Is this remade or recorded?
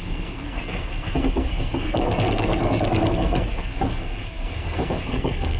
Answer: remade